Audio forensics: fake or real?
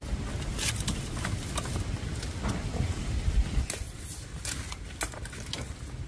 real